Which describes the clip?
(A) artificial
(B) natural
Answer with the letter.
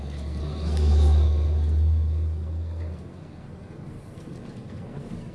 A